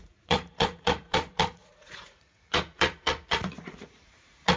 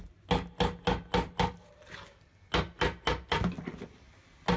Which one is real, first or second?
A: second